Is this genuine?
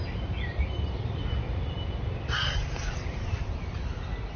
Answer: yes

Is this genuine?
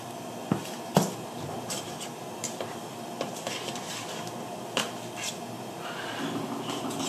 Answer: no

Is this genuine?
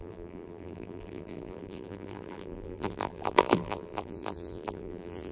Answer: no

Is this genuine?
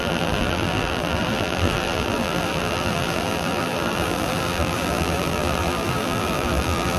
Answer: no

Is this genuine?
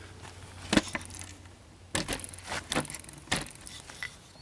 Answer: yes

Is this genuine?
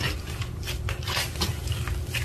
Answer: yes